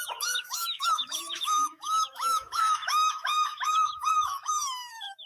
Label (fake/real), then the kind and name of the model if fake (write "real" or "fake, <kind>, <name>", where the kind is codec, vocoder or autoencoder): fake, autoencoder, DAC-VAE